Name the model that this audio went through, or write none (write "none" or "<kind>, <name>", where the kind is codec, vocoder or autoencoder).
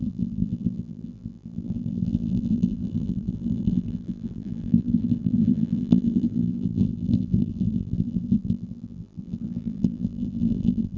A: vocoder, BigVGAN v2